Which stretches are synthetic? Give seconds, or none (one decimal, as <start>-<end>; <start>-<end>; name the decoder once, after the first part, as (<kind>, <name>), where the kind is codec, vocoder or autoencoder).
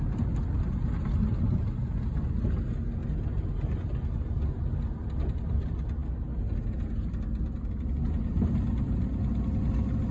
none